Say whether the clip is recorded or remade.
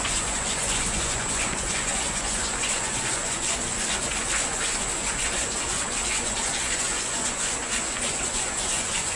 remade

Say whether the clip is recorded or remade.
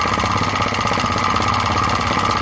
recorded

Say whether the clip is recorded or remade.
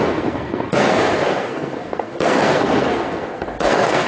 remade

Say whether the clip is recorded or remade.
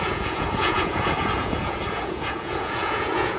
remade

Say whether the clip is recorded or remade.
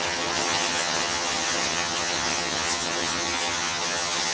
remade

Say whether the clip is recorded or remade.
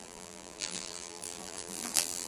remade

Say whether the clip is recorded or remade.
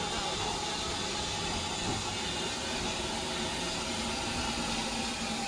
recorded